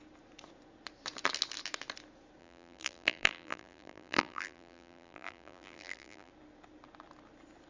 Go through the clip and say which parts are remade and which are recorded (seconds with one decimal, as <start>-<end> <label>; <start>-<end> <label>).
0.0-2.4 recorded; 2.4-6.3 remade; 6.3-7.7 recorded